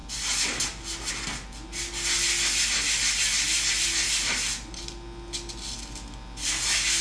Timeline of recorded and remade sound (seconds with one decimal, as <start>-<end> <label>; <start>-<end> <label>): 0.0-7.0 recorded